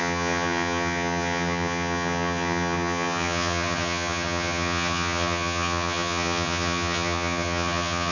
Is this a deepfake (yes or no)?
yes